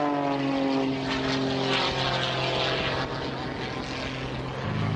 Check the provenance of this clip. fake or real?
real